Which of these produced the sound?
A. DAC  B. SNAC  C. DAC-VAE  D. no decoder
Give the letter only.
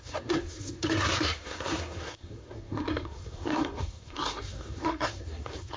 B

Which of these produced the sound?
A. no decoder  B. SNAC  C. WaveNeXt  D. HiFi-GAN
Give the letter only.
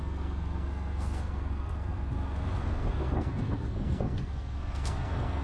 B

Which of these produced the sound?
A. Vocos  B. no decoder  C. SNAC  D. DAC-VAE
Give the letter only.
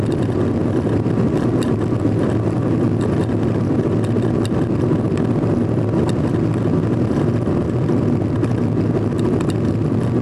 B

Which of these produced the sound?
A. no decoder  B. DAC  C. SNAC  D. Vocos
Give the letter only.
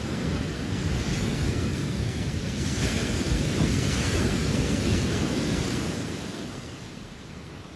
C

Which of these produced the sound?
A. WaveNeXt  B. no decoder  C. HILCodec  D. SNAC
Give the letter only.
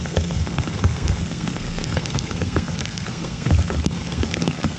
D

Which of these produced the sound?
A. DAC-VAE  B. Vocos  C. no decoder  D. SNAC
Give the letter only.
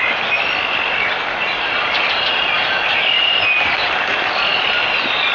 C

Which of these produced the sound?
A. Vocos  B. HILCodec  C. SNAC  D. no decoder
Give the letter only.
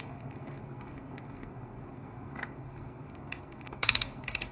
C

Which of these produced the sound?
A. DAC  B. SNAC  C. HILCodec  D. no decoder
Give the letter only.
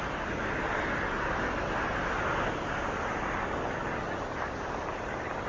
D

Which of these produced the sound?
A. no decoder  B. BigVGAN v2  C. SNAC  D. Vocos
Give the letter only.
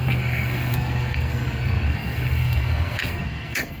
C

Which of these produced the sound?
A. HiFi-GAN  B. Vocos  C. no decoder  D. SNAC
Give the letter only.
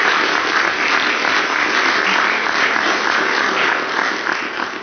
C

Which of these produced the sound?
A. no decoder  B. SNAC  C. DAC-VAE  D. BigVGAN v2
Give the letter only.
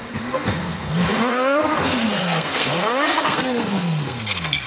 B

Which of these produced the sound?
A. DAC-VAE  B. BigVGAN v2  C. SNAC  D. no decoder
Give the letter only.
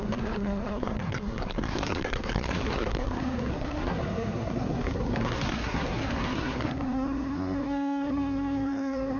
C